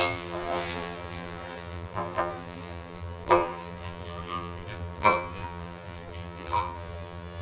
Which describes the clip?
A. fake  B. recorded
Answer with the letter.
A